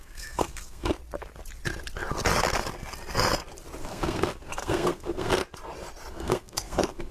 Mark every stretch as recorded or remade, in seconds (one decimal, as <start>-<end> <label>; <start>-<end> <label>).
0.0-0.9 remade; 0.9-3.8 recorded; 3.8-5.4 remade; 5.4-6.1 recorded; 6.1-7.1 remade